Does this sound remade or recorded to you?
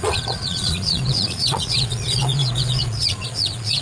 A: remade